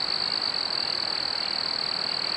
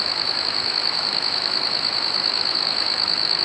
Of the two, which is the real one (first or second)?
first